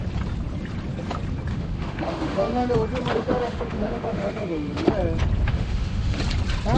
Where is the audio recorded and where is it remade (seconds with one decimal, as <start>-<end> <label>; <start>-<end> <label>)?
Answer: 0.0-1.5 recorded; 1.5-2.7 remade; 2.7-3.1 recorded; 3.1-4.9 remade; 4.9-5.5 recorded; 5.5-6.2 remade; 6.2-6.8 recorded